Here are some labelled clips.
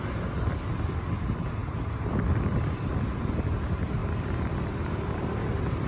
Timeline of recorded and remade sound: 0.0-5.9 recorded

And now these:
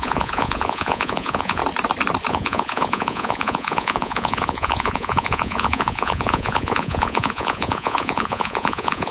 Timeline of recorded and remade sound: 0.0-1.6 remade; 1.6-2.3 recorded; 2.3-9.1 remade

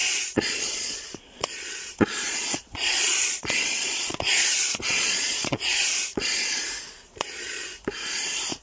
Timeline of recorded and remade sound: 0.0-5.7 remade; 5.7-6.9 recorded; 6.9-7.7 remade; 7.7-8.6 recorded

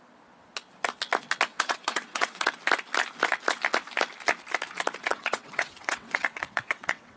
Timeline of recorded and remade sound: 0.0-1.5 recorded; 1.5-2.5 remade; 2.5-5.1 recorded; 5.1-7.2 remade